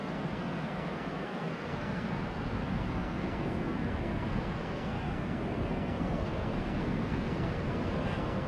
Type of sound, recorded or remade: remade